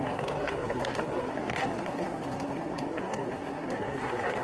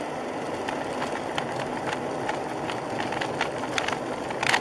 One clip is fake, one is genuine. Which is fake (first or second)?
first